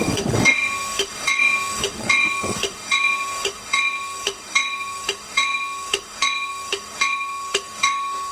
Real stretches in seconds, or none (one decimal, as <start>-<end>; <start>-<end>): none